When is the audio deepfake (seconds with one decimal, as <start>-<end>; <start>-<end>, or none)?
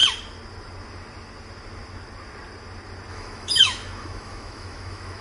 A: 3.1-5.2